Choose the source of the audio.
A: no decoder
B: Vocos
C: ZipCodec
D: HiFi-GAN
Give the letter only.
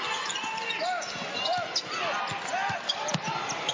A